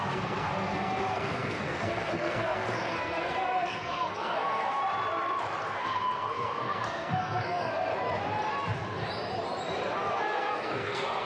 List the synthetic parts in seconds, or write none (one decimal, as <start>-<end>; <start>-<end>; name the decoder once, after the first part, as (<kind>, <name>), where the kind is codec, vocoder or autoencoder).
0.0-4.8 (codec, SNAC); 5.6-7.9; 10.1-11.3